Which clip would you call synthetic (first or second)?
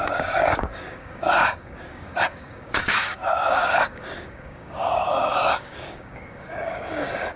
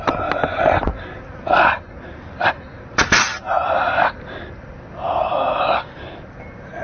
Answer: first